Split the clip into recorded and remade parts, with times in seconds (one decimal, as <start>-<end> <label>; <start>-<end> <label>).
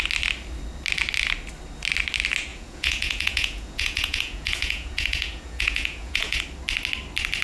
0.0-2.5 recorded; 2.5-6.4 remade; 6.4-7.4 recorded